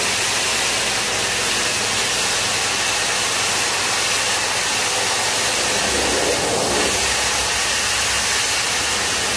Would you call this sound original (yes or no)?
yes